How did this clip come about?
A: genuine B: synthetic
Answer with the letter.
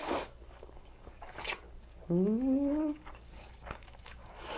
B